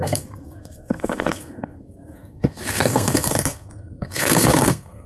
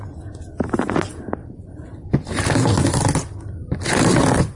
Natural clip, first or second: second